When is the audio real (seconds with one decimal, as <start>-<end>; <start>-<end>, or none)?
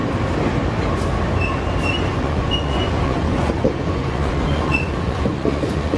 0.0-2.1